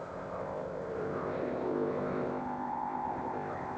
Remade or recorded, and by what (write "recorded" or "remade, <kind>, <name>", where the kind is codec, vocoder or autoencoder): remade, codec, ZipCodec